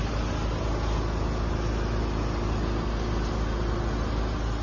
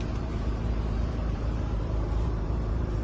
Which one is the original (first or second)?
first